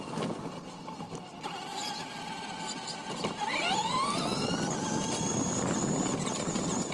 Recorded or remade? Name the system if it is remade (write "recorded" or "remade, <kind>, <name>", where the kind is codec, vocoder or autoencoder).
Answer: recorded